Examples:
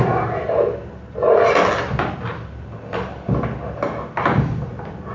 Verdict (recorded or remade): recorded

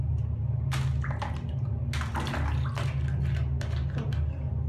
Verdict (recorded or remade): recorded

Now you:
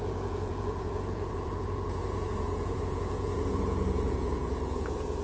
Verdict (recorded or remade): remade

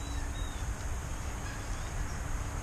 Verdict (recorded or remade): recorded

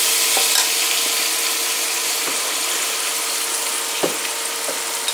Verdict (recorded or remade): recorded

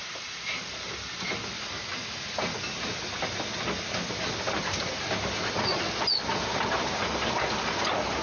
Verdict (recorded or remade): recorded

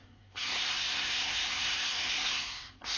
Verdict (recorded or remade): remade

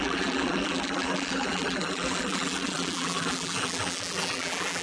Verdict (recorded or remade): remade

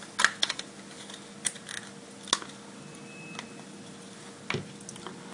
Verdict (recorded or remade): recorded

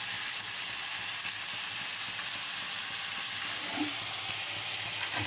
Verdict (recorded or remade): recorded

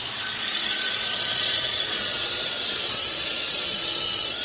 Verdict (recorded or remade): remade